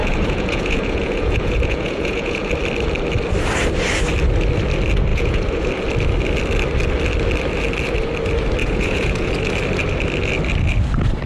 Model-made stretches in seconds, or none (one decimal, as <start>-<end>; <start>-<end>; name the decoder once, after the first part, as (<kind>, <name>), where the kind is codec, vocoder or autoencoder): 0.0-2.5 (vocoder, Vocos); 5.1-5.7; 8.6-9.3